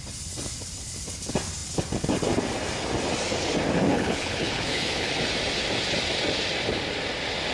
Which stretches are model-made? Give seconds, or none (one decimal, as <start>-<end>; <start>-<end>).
3.9-5.1